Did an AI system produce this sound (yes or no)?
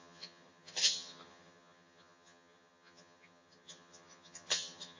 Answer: yes